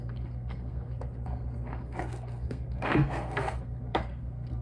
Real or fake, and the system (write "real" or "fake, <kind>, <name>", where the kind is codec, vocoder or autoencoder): fake, codec, SNAC